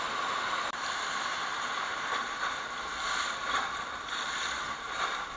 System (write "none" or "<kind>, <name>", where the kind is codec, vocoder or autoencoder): vocoder, BigVGAN v2